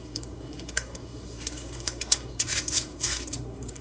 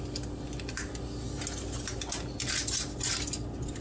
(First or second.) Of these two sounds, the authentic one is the second